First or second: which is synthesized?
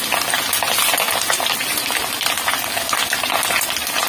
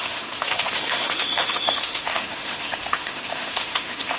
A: second